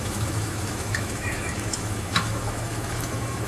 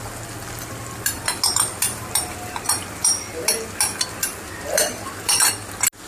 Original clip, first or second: second